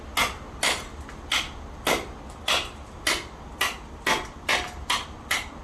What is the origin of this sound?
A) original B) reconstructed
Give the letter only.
A